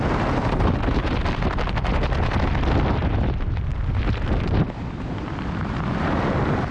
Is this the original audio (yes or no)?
yes